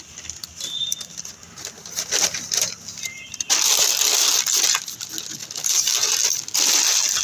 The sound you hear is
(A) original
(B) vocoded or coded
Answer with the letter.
A